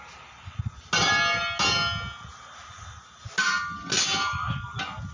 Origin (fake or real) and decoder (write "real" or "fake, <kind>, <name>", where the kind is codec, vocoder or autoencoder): real